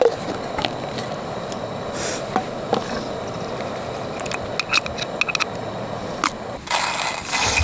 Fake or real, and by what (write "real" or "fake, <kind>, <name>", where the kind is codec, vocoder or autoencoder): real